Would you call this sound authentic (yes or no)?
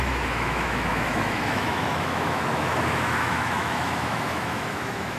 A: no